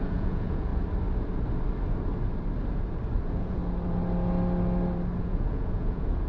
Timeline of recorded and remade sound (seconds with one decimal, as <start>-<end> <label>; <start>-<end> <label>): 0.0-0.7 remade; 0.7-3.2 recorded; 3.2-3.6 remade; 3.6-5.2 recorded; 5.2-6.3 remade